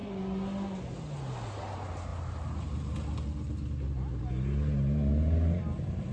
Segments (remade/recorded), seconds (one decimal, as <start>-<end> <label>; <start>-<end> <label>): 0.0-6.1 recorded